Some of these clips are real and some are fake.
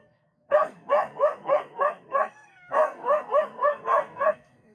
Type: fake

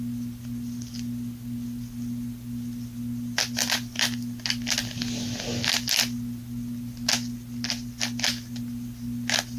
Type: real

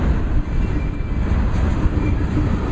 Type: real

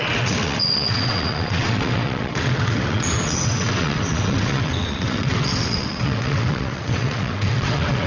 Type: fake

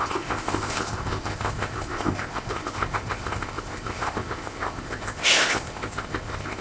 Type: fake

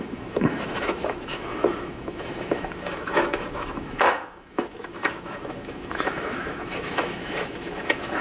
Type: fake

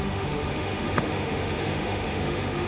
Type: fake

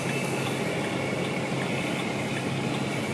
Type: real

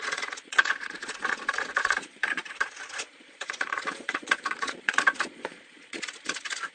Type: fake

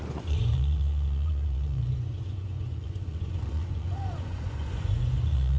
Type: fake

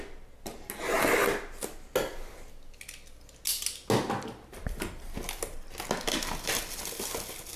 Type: real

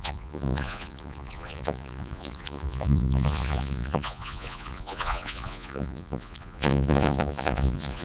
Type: fake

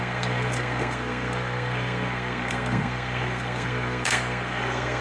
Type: fake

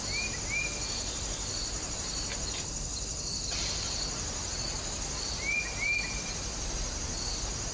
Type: real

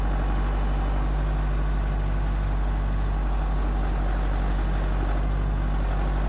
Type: real